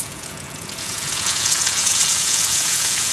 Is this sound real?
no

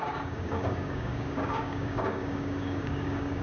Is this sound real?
no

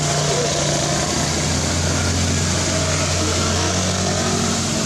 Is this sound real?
yes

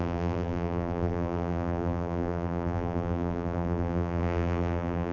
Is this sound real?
no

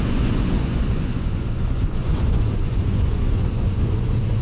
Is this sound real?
no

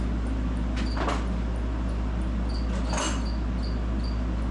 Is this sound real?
yes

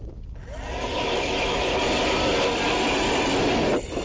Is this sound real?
yes